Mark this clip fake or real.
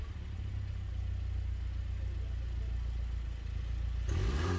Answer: real